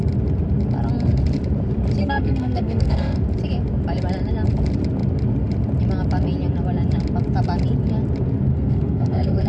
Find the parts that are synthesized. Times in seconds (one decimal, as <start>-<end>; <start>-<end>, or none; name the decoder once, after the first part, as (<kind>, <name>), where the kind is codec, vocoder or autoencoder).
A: 2.0-3.2 (codec, SNAC); 8.5-9.5